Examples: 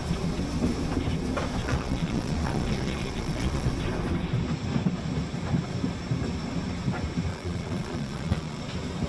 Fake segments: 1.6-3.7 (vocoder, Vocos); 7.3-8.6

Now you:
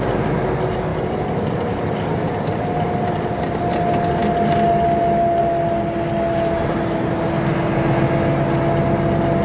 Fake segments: none

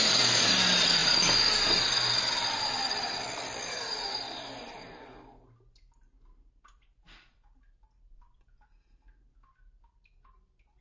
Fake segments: none